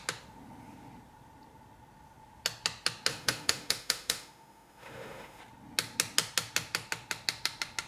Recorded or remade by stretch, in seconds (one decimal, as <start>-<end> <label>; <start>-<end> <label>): 0.0-3.1 recorded; 3.1-5.4 remade; 5.4-7.9 recorded